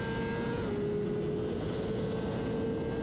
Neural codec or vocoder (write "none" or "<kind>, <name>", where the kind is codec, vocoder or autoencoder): none